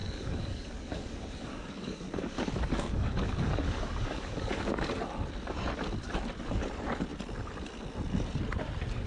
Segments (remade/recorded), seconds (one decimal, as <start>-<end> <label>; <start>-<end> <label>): 0.0-4.9 remade; 4.9-9.1 recorded